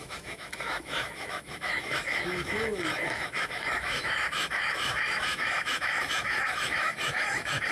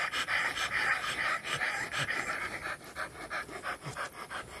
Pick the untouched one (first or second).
second